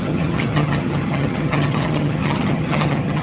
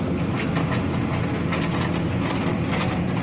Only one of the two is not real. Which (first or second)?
first